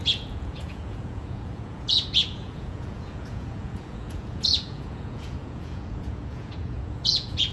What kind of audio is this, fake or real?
fake